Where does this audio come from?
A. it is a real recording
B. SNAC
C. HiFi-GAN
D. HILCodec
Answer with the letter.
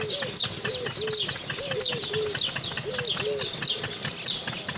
A